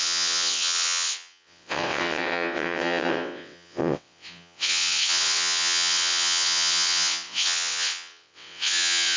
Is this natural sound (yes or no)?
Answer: no